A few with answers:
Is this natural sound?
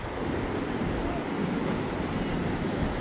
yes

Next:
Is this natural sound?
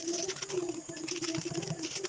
no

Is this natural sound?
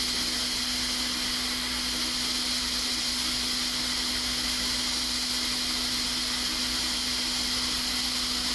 yes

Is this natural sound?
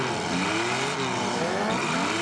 yes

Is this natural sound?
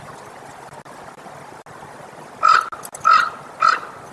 yes